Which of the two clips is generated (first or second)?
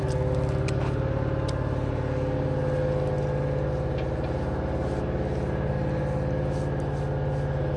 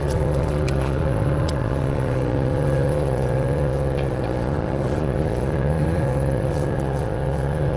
second